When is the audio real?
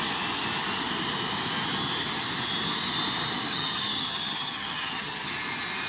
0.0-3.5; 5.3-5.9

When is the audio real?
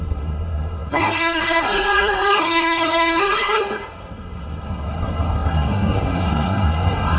none